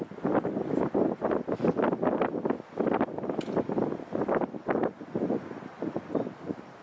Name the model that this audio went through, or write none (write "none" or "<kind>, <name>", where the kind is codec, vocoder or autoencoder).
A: none